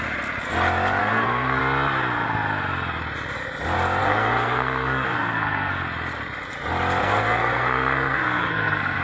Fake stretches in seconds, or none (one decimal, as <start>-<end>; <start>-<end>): 1.0-1.6; 4.0-5.7; 7.0-9.0